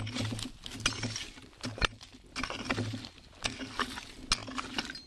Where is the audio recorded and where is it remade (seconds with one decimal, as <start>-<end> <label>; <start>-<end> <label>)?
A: 0.0-5.1 recorded